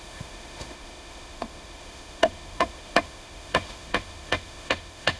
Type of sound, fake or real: fake